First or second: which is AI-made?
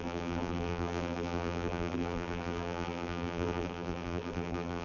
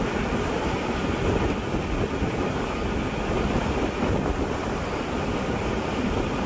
first